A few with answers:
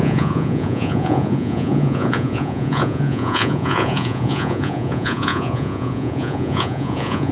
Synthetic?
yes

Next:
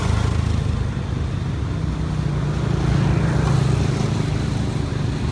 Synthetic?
no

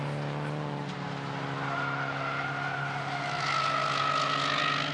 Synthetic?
no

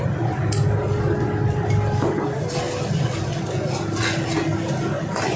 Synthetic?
no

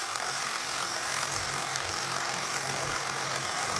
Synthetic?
yes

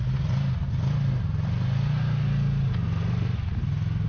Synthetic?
no